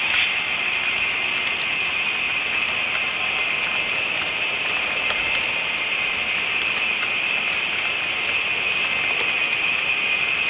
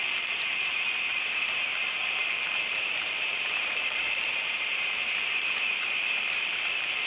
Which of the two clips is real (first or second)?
first